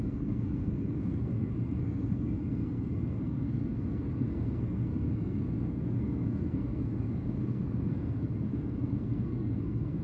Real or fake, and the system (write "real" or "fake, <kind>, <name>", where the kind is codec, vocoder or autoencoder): fake, codec, SNAC